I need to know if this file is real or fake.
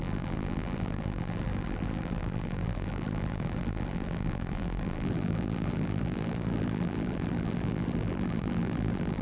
fake